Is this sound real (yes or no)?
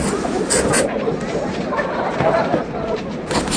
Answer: yes